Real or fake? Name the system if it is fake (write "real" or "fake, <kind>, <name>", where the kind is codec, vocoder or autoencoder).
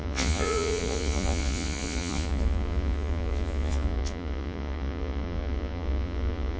fake, vocoder, Vocos